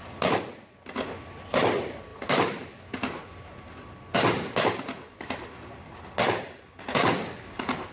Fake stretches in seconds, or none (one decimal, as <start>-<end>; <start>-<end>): none